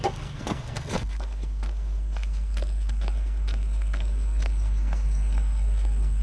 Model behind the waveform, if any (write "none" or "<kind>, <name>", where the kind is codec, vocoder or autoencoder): codec, SNAC